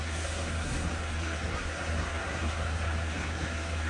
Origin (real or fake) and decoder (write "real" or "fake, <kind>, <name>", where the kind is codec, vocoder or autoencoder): fake, codec, SNAC